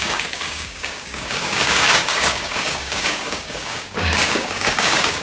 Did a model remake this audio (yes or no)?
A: yes